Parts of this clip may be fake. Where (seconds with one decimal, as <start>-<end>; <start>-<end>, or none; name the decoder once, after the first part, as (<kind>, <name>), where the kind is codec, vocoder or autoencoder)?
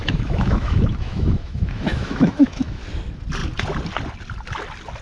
0.0-2.8 (autoencoder, DAC-VAE)